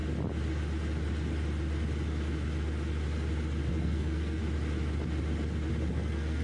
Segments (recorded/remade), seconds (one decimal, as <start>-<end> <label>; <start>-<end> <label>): 0.0-3.7 recorded; 3.7-4.4 remade; 4.4-5.9 recorded; 5.9-6.4 remade